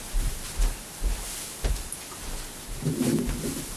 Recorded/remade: recorded